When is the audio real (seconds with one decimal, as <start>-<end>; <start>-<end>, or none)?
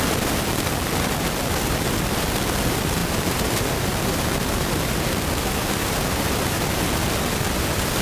0.0-3.0; 5.0-8.0